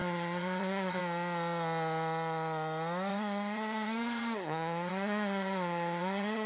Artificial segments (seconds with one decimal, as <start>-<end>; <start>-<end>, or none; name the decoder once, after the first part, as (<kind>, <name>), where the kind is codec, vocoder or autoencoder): 0.0-1.0 (vocoder, HiFi-GAN); 3.1-6.5